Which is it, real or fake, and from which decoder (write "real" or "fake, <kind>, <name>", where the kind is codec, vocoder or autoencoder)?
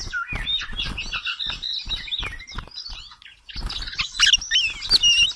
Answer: real